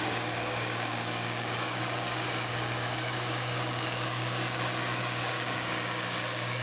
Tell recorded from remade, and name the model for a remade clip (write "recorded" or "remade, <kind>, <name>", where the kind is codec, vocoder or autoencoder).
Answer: remade, codec, DAC